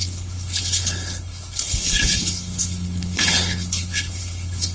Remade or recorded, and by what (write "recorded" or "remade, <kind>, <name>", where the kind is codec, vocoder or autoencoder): remade, codec, HILCodec